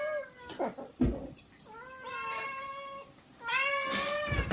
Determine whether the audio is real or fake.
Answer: real